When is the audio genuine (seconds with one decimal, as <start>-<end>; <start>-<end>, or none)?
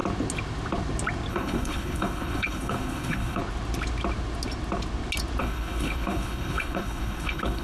0.0-1.3; 3.4-5.4